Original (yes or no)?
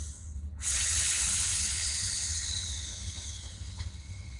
no